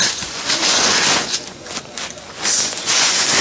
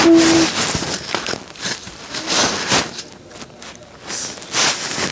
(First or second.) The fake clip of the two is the first